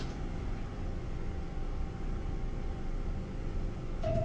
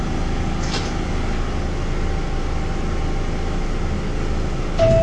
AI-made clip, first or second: first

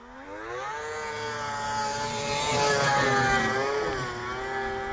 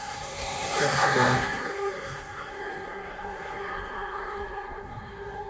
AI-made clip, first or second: second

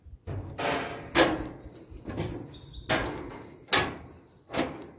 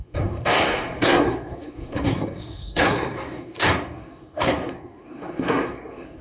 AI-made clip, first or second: second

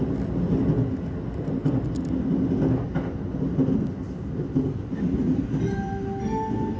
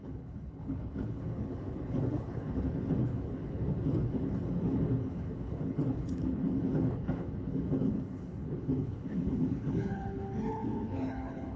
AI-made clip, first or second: second